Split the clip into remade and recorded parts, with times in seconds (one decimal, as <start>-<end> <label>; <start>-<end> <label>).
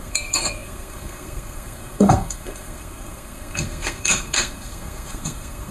0.0-5.7 remade